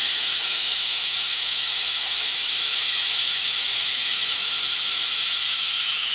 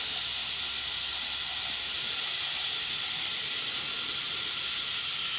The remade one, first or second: first